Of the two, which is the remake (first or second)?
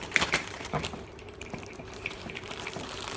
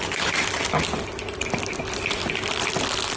first